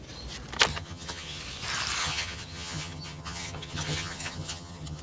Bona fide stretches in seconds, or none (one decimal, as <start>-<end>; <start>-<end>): 0.0-0.7; 1.4-2.0

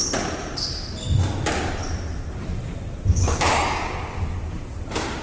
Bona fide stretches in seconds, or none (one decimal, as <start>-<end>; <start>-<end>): 0.0-3.1; 4.0-5.2

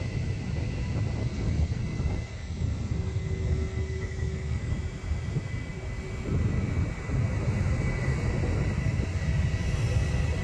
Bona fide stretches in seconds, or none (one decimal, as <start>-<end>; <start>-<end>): 0.0-1.2; 4.7-10.4

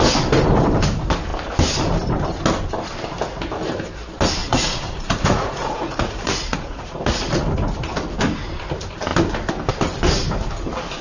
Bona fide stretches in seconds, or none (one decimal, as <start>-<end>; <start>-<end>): 0.0-4.4; 7.4-11.0